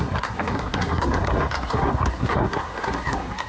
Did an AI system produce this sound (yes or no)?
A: yes